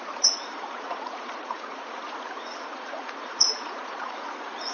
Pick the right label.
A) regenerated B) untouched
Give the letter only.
A